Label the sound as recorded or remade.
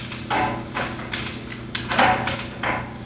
recorded